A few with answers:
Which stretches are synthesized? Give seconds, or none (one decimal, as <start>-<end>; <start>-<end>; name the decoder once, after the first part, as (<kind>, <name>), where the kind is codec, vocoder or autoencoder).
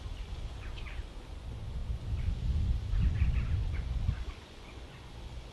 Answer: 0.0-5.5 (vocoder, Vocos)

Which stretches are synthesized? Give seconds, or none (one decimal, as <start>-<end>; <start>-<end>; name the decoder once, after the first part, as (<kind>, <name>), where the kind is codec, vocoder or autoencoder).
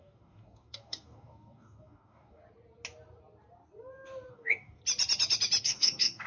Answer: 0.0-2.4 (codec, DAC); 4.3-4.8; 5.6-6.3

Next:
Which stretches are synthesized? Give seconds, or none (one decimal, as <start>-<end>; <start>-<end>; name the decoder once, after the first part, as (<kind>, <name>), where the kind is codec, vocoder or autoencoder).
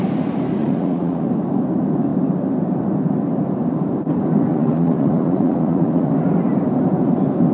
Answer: 0.6-1.3 (vocoder, Vocos); 4.5-6.1